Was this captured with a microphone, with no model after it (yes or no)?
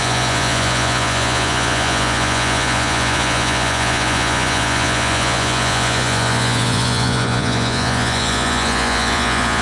no